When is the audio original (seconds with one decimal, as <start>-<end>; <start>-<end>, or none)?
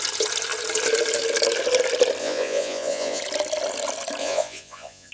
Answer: 0.0-2.2; 3.2-4.2